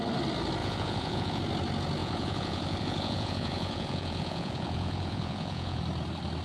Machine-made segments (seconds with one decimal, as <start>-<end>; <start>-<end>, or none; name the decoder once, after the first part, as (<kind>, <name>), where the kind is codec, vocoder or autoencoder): 0.6-1.4 (vocoder, Vocos); 2.0-5.8

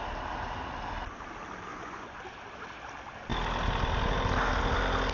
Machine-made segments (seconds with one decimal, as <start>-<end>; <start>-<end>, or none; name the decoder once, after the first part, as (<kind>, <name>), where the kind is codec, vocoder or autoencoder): 1.7-2.2 (vocoder, Vocos)

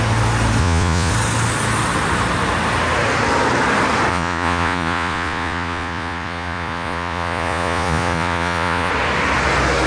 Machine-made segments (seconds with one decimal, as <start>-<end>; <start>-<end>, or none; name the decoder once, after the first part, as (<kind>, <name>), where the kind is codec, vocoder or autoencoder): 0.6-1.1 (vocoder, Vocos); 4.1-8.9

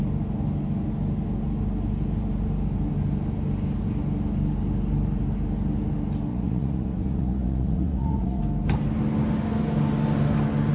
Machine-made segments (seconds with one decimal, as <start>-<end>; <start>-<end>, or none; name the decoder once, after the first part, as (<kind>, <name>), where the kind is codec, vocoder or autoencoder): 6.3-8.4 (vocoder, Vocos)

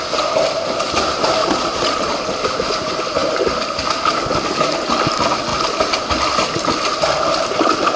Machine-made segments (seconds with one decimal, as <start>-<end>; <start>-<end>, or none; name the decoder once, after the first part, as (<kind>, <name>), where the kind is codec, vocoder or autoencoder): 1.4-2.2 (vocoder, Vocos)

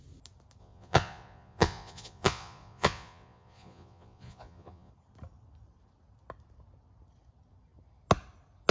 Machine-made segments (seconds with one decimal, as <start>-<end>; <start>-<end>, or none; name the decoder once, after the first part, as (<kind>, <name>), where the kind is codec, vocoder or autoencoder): 0.6-4.9 (vocoder, Vocos)